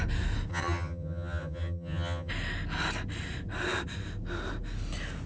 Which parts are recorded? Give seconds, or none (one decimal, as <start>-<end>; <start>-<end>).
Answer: 0.0-0.5; 2.3-5.3